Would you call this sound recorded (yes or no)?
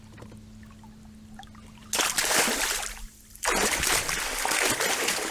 yes